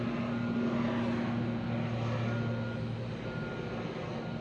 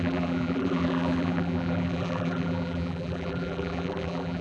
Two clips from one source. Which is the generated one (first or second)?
second